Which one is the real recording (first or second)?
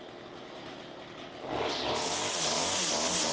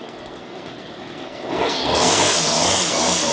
first